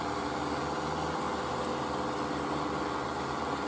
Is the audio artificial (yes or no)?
no